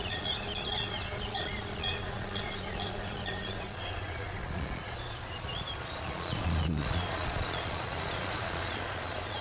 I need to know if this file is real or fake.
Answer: fake